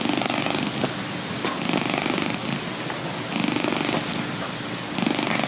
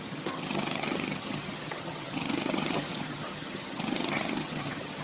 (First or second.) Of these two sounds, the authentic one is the first